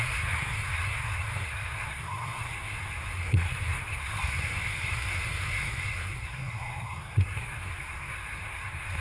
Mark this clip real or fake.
fake